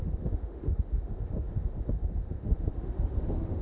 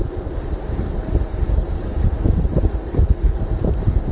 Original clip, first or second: second